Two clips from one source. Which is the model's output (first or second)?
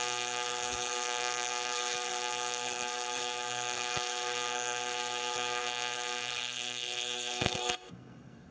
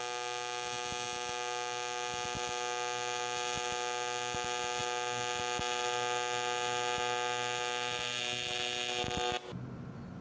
first